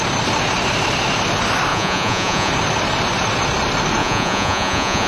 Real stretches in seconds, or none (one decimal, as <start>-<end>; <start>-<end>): 0.0-1.7; 2.5-4.0